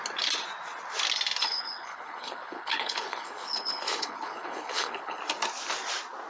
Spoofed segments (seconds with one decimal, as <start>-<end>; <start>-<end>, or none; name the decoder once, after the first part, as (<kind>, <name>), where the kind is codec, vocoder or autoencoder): 1.4-5.2 (codec, HILCodec)